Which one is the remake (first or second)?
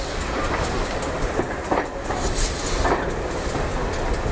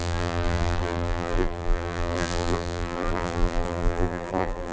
second